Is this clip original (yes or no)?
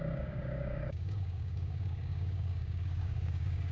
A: no